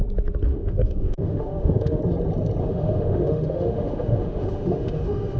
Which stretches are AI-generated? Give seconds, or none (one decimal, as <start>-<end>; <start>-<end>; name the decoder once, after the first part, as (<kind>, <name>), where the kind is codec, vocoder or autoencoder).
0.5-2.0 (autoencoder, DAC-VAE); 2.6-5.4